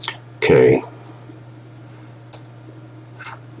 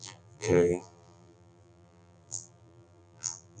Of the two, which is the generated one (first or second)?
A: second